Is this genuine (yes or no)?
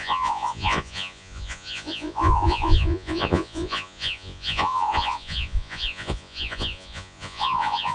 no